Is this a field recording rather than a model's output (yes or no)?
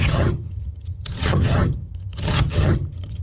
no